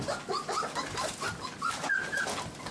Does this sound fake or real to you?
real